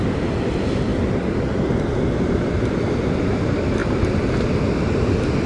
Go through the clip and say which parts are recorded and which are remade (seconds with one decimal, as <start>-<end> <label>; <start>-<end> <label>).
0.0-0.9 recorded; 0.9-1.4 remade; 1.4-5.5 recorded